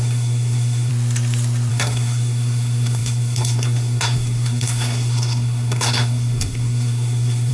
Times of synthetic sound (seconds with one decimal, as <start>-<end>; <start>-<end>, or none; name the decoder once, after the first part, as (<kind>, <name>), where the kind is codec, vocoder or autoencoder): 0.0-0.9 (codec, SNAC); 1.7-7.5